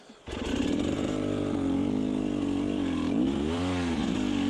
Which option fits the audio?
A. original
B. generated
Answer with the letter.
B